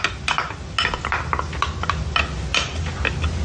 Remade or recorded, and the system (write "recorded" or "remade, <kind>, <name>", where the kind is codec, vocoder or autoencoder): recorded